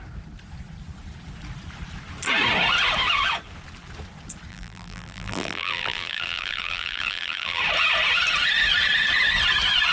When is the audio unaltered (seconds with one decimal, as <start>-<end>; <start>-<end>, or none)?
0.0-4.5; 7.6-9.9